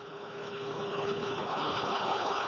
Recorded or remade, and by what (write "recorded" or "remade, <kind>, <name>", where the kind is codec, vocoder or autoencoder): remade, codec, HILCodec